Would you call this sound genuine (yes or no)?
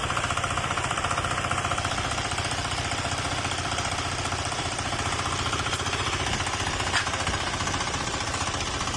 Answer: no